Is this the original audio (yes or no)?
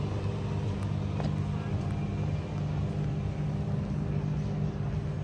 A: yes